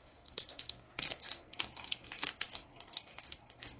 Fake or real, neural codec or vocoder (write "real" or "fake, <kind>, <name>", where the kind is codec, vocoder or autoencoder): fake, codec, SNAC